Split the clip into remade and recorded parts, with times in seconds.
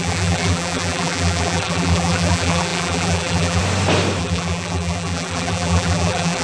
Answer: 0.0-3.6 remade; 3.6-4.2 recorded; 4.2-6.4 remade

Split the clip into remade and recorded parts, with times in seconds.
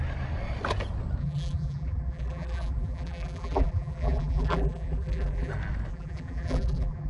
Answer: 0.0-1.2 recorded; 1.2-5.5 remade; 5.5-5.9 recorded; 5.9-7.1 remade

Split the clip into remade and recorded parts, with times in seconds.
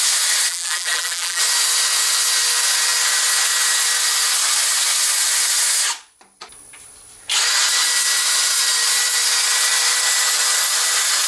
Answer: 0.0-0.5 recorded; 0.5-1.4 remade; 1.4-11.3 recorded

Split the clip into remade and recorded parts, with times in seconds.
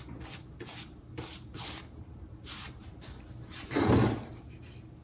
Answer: 0.0-0.7 recorded; 0.7-3.7 remade; 3.7-5.0 recorded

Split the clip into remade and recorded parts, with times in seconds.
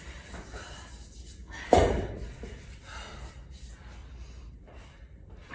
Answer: 0.0-1.4 recorded; 1.4-2.8 remade; 2.8-4.0 recorded; 4.0-5.5 remade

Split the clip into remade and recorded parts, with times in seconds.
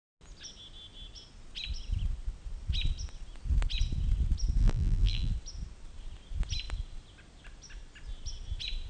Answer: 0.0-4.6 recorded; 4.6-5.3 remade; 5.3-8.9 recorded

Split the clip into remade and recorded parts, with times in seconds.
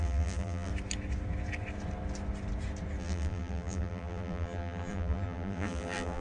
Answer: 0.0-0.7 remade; 0.7-3.0 recorded; 3.0-6.2 remade